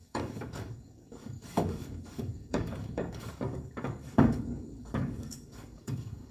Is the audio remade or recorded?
remade